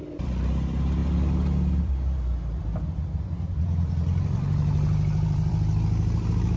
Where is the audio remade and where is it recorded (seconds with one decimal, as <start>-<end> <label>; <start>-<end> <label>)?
0.0-1.0 remade; 1.0-1.8 recorded; 1.8-6.6 remade